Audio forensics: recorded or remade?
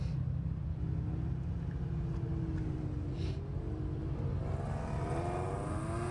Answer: recorded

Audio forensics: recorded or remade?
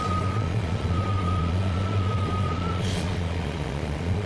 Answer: remade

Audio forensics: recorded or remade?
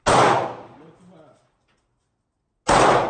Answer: recorded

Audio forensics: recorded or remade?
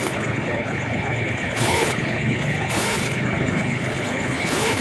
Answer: remade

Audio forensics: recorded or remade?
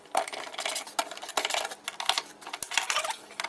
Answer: recorded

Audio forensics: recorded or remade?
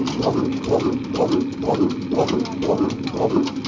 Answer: recorded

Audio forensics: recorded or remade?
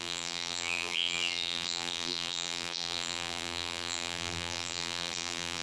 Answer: remade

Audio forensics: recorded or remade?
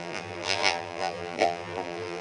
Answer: remade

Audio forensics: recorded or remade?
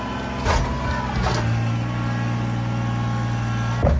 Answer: recorded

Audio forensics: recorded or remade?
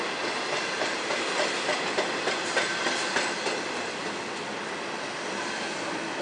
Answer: recorded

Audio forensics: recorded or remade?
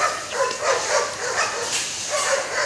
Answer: recorded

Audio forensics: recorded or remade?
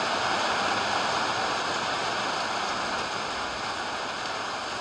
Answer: remade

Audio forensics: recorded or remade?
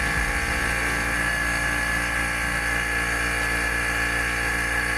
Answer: recorded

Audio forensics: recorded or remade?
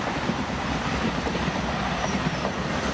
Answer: remade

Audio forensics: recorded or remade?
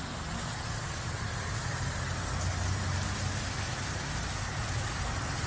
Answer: recorded